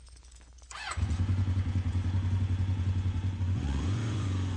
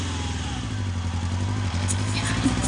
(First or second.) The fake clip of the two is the first